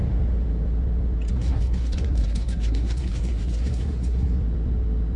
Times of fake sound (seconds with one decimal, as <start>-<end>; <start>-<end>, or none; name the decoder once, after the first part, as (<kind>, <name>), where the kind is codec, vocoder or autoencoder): 1.3-4.4 (codec, SNAC)